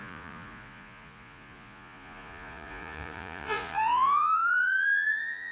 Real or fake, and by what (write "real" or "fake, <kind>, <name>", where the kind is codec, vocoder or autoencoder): fake, vocoder, Vocos